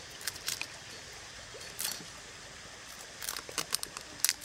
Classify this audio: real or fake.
real